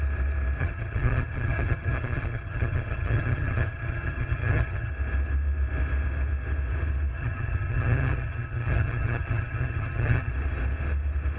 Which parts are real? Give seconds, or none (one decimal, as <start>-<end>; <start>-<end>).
0.0-0.6; 4.9-7.1; 10.3-11.4